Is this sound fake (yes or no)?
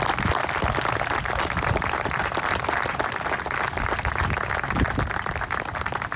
no